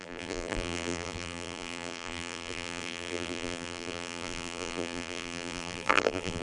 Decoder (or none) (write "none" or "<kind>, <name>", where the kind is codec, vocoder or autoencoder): vocoder, BigVGAN v2